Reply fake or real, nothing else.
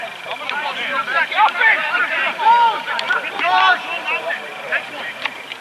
fake